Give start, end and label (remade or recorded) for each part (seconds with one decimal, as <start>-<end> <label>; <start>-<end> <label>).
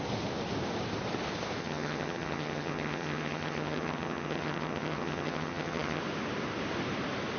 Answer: 0.0-1.6 recorded; 1.6-6.0 remade; 6.0-7.4 recorded